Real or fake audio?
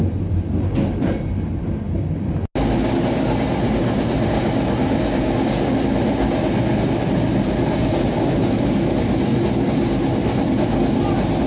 real